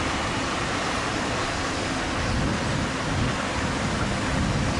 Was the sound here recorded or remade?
recorded